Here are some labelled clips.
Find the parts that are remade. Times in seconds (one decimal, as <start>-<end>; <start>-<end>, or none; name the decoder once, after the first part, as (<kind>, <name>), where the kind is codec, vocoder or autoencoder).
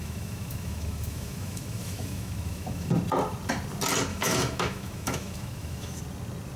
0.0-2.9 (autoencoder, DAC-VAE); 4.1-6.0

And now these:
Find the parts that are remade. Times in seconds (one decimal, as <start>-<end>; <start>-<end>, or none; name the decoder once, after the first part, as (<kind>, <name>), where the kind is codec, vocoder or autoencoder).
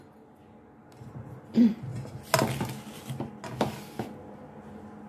none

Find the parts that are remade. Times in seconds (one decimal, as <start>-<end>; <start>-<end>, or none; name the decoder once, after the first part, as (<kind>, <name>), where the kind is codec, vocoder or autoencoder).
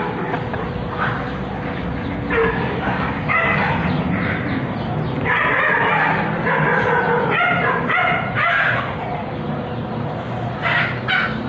2.4-3.6 (codec, DAC)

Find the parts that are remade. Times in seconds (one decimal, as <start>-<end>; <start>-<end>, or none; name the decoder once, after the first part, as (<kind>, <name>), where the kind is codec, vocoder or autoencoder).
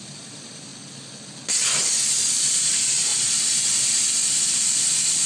0.0-0.7 (vocoder, BigVGAN v2); 2.3-3.1; 4.5-5.3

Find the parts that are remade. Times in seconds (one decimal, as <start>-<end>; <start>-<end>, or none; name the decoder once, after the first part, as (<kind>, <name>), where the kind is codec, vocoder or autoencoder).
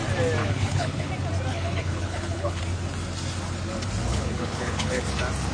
0.4-1.1 (codec, HILCodec); 1.5-2.6; 4.1-5.0